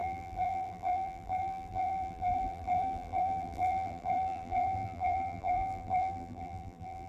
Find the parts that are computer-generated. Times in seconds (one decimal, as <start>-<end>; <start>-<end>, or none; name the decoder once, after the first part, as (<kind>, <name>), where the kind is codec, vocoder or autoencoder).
0.0-7.1 (vocoder, BigVGAN v2)